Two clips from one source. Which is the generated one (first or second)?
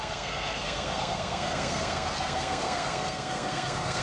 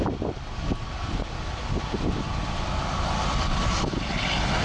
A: first